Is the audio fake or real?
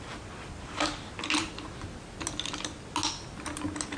real